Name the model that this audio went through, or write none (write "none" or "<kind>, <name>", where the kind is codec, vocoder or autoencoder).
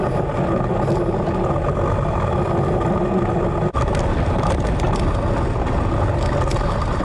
none